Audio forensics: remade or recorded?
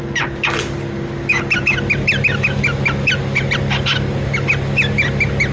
recorded